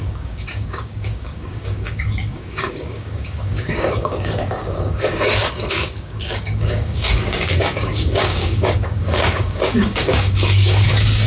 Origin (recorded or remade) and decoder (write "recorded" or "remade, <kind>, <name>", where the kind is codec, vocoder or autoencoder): remade, codec, DAC